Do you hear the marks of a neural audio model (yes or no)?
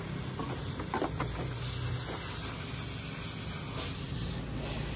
no